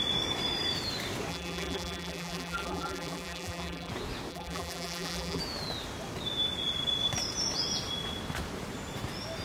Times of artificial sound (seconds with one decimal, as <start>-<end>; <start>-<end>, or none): 1.3-3.9; 4.3-5.4